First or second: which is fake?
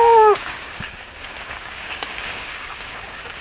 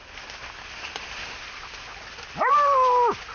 first